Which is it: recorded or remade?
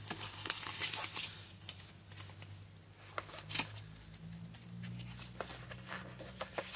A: recorded